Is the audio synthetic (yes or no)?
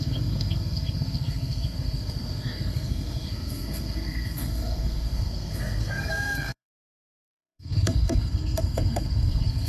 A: yes